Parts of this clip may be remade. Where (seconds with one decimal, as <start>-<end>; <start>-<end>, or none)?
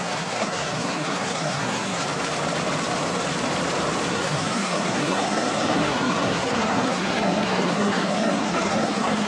0.0-2.0; 4.1-9.3